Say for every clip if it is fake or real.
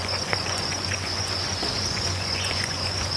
fake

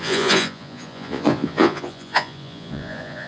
fake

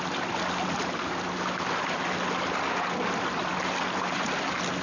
real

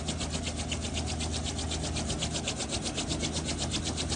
real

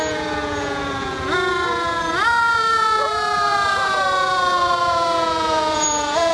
fake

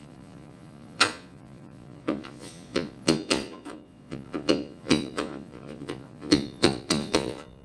fake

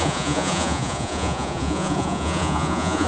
fake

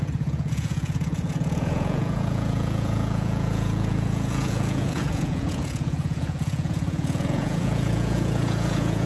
fake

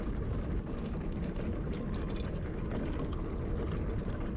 real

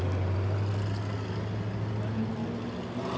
real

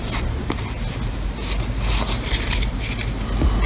real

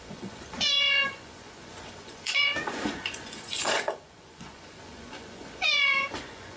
fake